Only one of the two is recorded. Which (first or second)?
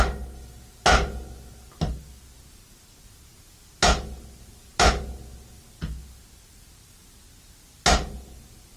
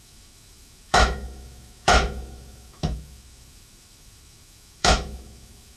first